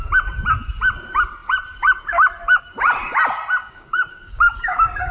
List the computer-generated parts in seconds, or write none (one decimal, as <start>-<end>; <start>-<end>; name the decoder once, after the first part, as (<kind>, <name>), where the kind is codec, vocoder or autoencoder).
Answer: 3.6-5.1 (codec, DAC)